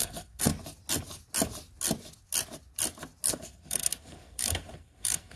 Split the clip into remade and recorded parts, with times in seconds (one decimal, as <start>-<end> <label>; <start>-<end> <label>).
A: 0.0-0.5 remade; 0.5-3.3 recorded; 3.3-5.4 remade